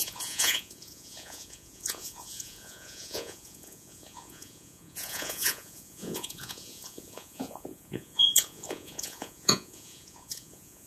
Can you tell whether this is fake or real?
fake